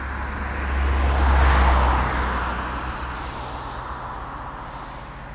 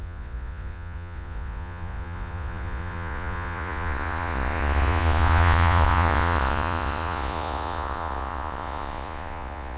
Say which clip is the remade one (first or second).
second